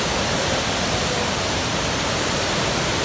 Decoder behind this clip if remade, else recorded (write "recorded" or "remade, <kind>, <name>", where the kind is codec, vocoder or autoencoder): recorded